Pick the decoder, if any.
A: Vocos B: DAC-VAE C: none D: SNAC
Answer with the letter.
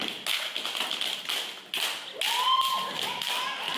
C